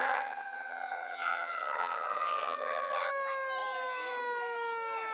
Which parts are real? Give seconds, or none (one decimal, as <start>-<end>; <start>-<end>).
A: 3.1-5.1